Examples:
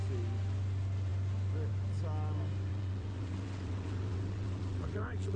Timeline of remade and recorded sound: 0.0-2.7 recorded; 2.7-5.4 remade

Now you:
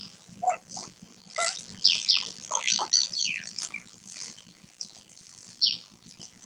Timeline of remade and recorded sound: 0.0-6.5 remade

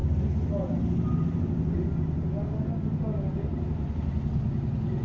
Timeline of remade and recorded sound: 0.0-5.0 recorded

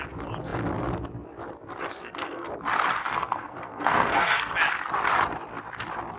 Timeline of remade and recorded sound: 0.0-2.0 recorded; 2.0-2.5 remade; 2.5-3.0 recorded; 3.0-4.5 remade; 4.5-6.2 recorded